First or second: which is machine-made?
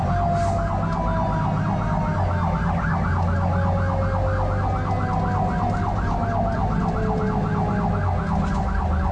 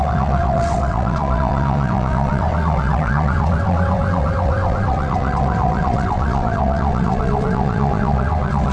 second